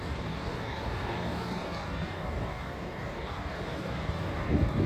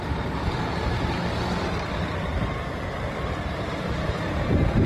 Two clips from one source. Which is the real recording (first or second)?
second